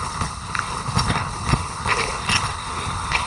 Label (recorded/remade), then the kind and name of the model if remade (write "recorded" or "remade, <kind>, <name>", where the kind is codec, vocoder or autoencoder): remade, codec, HILCodec